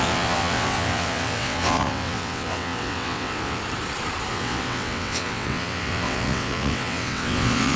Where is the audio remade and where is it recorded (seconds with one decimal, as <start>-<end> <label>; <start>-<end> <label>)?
0.0-3.6 remade; 3.6-4.3 recorded; 4.3-7.8 remade